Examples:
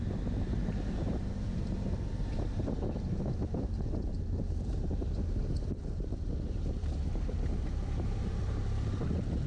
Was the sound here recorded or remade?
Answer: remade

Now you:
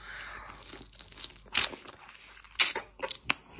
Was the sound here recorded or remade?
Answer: recorded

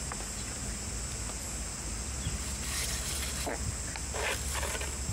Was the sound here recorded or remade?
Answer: recorded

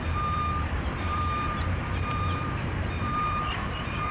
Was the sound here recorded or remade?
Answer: remade